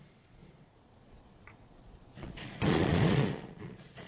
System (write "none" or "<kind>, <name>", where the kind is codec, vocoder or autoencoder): vocoder, Vocos